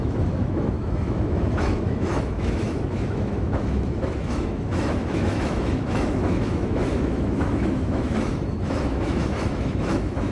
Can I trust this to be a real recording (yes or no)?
no